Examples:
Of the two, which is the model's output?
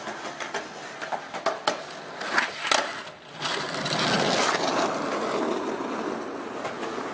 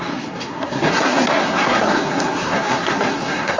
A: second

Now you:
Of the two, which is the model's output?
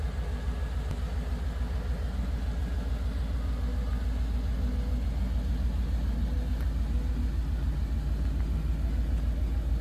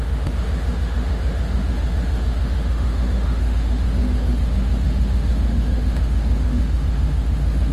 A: second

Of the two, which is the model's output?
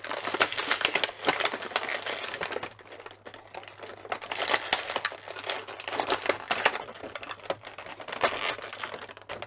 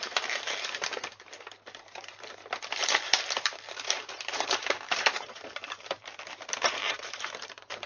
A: second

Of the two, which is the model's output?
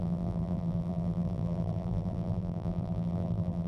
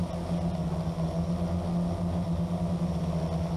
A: first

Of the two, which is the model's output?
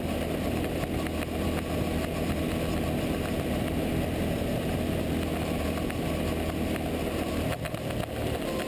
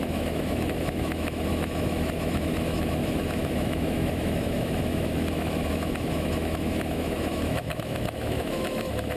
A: second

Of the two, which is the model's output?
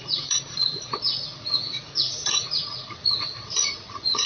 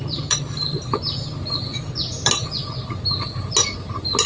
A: first